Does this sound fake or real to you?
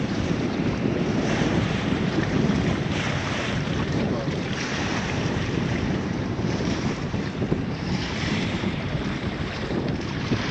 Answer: fake